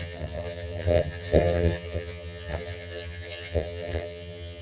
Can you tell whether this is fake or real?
fake